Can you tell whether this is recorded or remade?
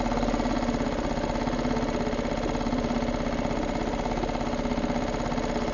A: recorded